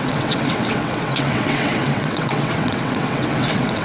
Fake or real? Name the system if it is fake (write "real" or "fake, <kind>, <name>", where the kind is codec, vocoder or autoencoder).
fake, vocoder, WaveNeXt